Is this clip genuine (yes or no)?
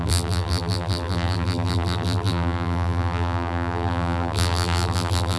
no